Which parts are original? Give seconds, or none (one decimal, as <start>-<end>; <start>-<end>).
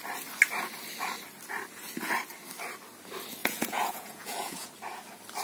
0.0-3.4; 4.7-5.4